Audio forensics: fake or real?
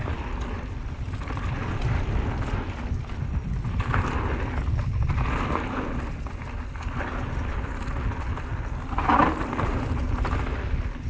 real